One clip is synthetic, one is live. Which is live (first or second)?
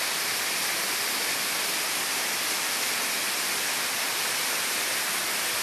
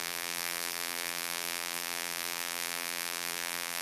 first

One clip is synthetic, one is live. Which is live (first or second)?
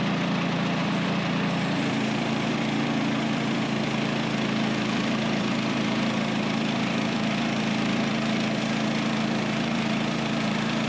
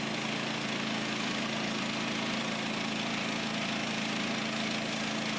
second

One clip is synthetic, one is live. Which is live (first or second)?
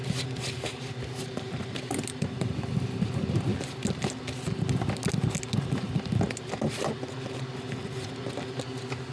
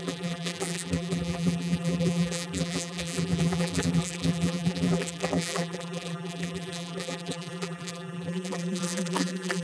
first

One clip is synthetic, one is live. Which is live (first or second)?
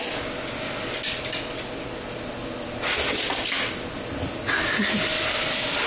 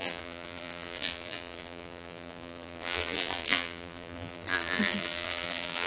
first